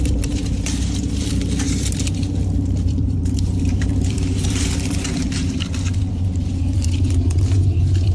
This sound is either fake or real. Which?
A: fake